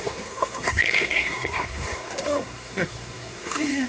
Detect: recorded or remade remade